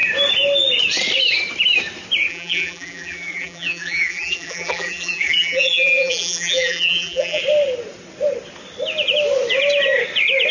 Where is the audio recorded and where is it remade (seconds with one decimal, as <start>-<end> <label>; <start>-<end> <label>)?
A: 0.0-2.3 recorded; 2.3-7.4 remade; 7.4-10.5 recorded